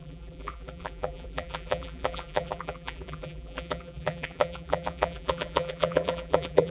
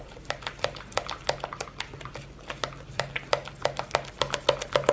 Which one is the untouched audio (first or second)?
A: second